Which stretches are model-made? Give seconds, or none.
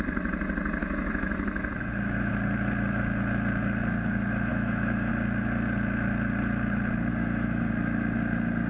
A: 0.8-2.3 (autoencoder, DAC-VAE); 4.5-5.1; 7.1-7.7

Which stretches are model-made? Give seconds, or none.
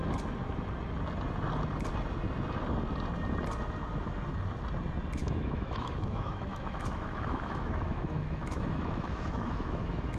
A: 5.2-10.2 (autoencoder, DAC-VAE)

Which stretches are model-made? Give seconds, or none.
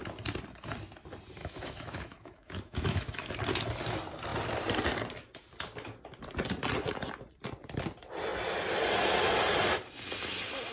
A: 1.4-3.3 (autoencoder, DAC-VAE)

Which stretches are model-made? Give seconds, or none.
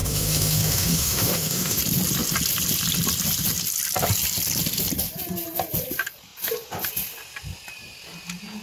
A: 0.0-1.8 (autoencoder, DAC-VAE)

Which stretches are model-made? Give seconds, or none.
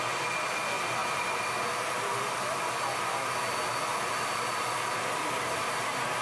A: none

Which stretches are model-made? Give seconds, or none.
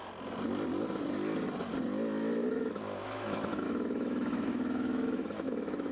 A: 2.2-5.9 (autoencoder, DAC-VAE)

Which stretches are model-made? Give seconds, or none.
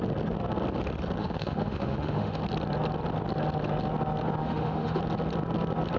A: 1.2-2.4 (autoencoder, DAC-VAE); 4.4-5.0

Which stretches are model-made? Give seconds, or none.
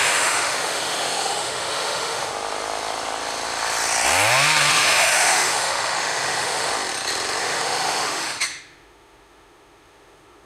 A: 0.0-2.3 (autoencoder, DAC-VAE); 4.7-6.7; 7.4-10.5